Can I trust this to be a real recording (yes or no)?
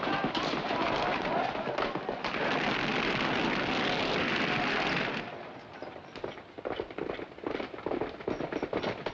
yes